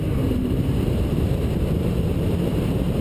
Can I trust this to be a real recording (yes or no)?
no